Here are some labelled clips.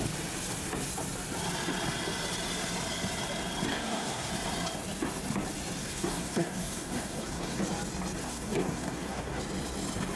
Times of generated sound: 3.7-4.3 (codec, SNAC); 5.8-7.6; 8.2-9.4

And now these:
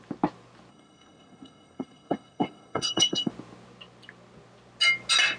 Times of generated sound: 0.7-3.3 (codec, SNAC)

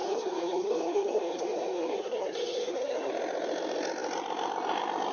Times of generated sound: 0.0-3.1 (codec, SNAC)

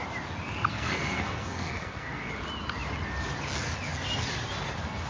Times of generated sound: 0.7-2.3 (codec, SNAC)

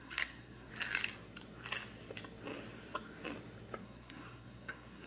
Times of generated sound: 0.0-0.7 (codec, SNAC); 3.8-5.1

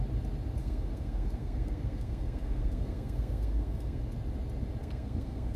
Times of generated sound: 0.6-4.0 (codec, SNAC); 4.8-5.6

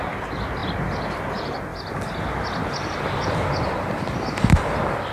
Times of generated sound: none